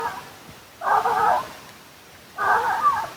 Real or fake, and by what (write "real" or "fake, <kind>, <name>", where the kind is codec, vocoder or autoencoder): real